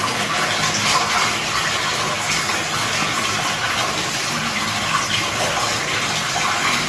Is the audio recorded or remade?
recorded